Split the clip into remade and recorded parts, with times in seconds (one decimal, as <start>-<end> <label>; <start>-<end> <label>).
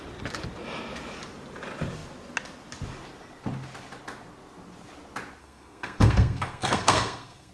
0.0-5.4 recorded; 5.4-7.5 remade